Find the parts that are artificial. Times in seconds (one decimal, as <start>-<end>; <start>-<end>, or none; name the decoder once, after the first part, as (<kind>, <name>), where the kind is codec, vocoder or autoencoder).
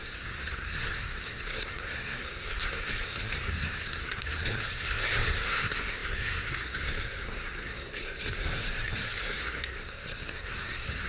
0.0-11.1 (codec, SNAC)